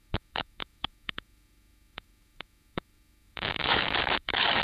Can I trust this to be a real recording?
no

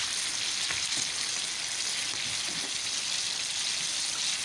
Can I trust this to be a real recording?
yes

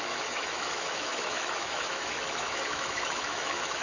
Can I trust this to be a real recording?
no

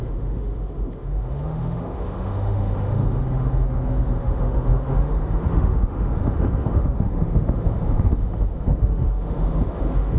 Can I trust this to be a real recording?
no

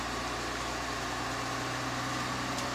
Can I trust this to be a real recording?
yes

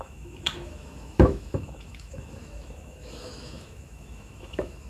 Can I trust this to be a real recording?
no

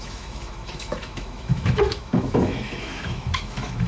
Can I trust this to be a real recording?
no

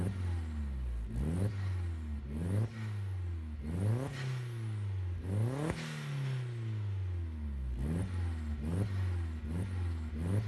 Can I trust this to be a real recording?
yes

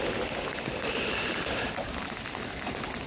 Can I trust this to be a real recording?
yes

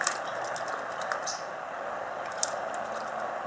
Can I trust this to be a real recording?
yes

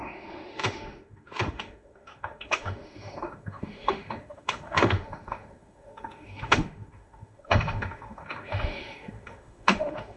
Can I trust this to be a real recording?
no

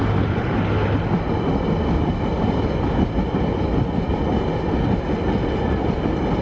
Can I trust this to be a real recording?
yes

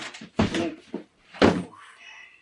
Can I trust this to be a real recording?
yes